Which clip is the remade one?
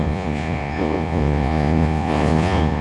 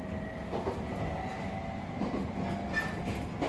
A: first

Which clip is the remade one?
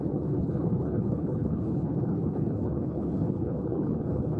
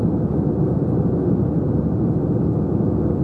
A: first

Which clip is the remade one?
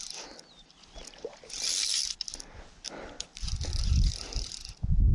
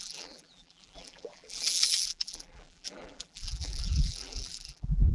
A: second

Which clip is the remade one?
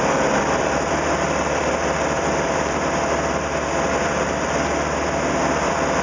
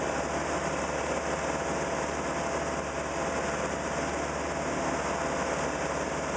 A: first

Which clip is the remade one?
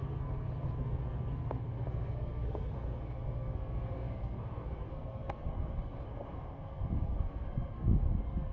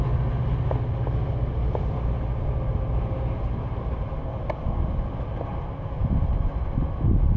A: first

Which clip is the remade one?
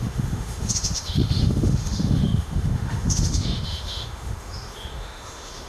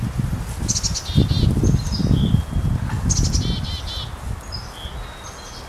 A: first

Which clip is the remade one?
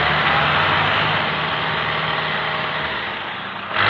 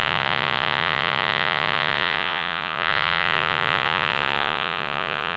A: second